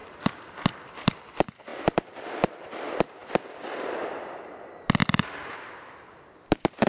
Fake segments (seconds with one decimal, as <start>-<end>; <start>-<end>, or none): 0.0-1.2; 1.7-2.3; 5.0-5.5

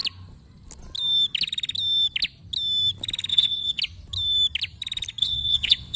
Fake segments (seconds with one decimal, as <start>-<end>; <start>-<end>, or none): 3.3-3.8; 5.2-6.0